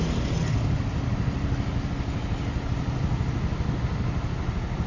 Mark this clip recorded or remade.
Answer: recorded